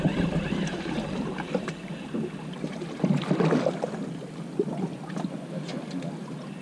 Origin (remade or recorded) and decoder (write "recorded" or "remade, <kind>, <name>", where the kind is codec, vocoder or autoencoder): recorded